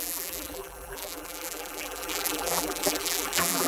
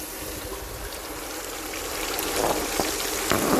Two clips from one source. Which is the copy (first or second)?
first